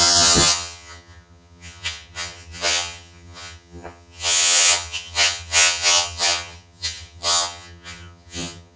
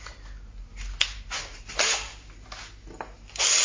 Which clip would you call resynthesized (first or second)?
first